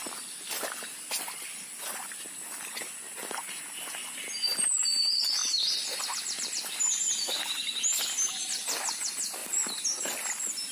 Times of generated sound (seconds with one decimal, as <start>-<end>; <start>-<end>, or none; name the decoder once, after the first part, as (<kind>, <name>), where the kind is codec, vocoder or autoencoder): none